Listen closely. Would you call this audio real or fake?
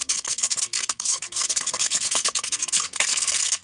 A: fake